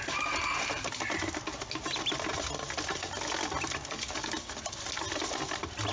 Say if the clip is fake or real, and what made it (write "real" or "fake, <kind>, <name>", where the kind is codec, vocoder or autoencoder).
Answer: real